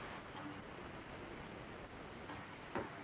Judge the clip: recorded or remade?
recorded